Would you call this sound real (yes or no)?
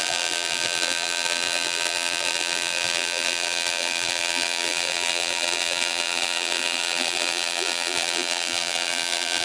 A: no